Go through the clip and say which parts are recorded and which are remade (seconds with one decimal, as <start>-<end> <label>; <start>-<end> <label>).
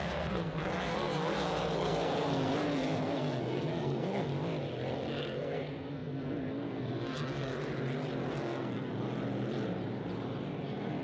0.0-4.3 remade; 4.3-4.9 recorded; 4.9-7.5 remade; 7.5-8.3 recorded; 8.3-8.9 remade; 8.9-10.6 recorded; 10.6-11.0 remade